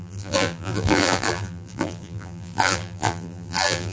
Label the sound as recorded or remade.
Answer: remade